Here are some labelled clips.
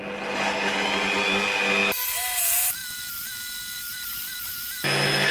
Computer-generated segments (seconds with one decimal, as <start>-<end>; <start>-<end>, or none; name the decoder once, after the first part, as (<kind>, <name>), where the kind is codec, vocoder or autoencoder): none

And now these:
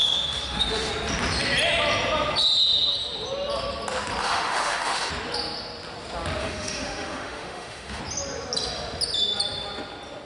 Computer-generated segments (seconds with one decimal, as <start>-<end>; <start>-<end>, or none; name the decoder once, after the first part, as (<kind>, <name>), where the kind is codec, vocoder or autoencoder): 0.0-0.9 (autoencoder, DAC-VAE); 4.2-5.1; 6.4-8.0

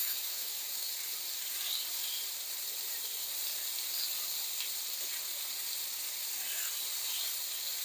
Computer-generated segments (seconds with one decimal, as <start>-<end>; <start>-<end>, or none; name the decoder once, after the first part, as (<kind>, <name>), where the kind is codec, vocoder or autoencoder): 0.0-0.9 (autoencoder, DAC-VAE)

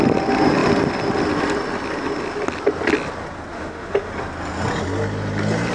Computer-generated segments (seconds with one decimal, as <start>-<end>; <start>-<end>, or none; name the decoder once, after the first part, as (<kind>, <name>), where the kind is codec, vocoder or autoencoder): 3.5-4.1 (autoencoder, DAC-VAE)

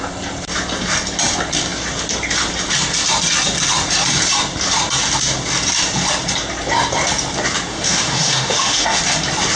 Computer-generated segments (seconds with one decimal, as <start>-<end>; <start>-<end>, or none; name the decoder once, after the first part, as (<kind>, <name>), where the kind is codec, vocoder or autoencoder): 7.7-9.0 (autoencoder, DAC-VAE)

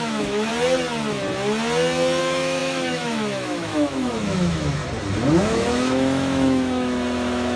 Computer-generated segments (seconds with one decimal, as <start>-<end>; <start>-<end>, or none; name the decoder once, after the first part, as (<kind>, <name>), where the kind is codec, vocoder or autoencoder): 0.0-0.5 (autoencoder, DAC-VAE); 2.2-4.8; 5.4-7.6